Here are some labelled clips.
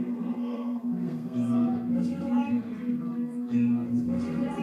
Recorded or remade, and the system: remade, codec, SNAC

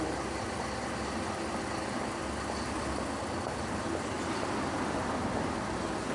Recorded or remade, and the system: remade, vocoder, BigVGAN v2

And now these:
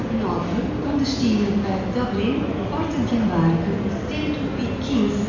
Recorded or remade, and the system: recorded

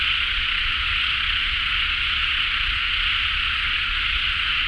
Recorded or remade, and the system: remade, vocoder, Vocos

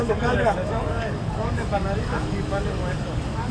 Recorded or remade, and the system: remade, codec, DAC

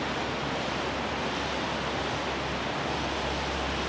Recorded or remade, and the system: recorded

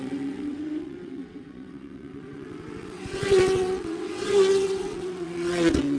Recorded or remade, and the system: remade, vocoder, WaveNeXt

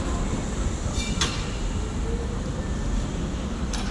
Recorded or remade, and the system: recorded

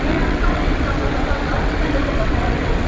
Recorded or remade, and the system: remade, vocoder, WaveNeXt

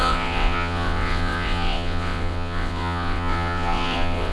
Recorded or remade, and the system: remade, vocoder, WaveNeXt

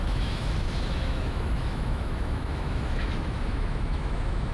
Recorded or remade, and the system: remade, autoencoder, DAC-VAE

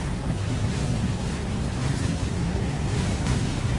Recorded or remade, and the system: remade, codec, SNAC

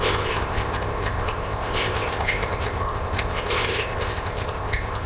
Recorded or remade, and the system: remade, codec, ZipCodec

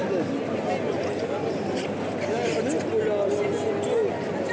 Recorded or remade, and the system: recorded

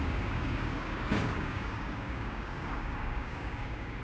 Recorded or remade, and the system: remade, codec, DAC